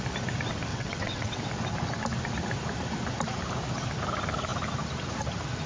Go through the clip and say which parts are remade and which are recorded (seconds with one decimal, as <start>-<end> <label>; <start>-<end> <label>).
0.0-0.7 recorded; 0.7-1.4 remade; 1.4-5.7 recorded